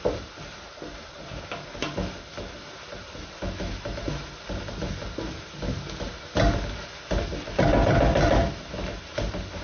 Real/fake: real